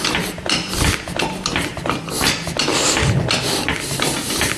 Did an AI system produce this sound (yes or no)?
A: no